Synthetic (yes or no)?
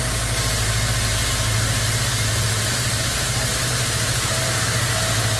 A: no